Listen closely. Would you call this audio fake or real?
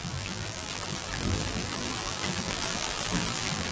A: fake